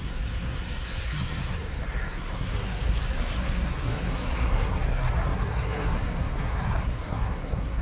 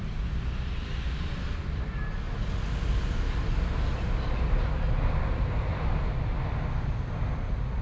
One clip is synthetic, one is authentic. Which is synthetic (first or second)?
first